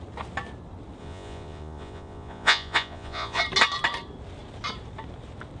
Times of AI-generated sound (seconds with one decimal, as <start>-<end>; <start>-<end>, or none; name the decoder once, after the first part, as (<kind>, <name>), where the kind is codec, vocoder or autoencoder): 1.0-3.4 (vocoder, Vocos)